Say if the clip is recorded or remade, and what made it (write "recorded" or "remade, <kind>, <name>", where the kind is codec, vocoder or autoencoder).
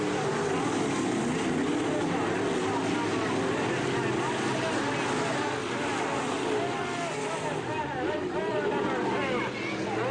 recorded